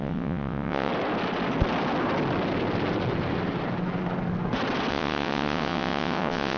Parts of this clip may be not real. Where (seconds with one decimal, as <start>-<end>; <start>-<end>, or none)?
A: 0.0-0.9; 4.9-6.6